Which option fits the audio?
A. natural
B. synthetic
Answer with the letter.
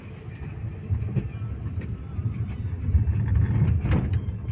A